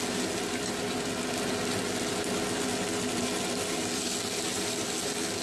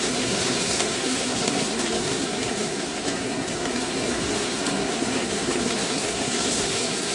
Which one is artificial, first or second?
second